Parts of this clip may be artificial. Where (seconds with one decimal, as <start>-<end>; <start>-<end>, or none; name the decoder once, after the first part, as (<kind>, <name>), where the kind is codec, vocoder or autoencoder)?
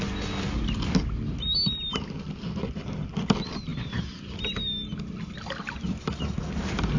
none